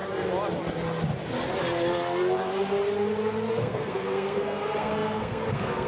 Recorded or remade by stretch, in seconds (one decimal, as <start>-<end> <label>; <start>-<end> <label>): 0.0-3.5 recorded; 3.5-5.9 remade